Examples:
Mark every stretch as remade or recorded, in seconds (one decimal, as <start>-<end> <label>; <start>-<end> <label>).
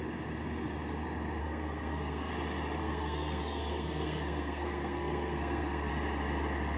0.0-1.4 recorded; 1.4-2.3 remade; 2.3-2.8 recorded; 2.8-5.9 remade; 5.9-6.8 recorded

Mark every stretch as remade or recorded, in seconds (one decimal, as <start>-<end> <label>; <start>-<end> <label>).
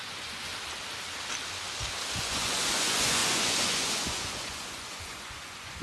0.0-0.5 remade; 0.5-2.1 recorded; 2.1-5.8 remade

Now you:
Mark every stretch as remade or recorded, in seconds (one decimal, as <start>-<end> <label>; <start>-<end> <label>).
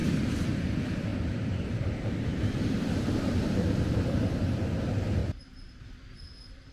0.0-0.7 remade; 0.7-1.1 recorded; 1.1-3.8 remade; 3.8-5.2 recorded; 5.2-5.8 remade; 5.8-6.7 recorded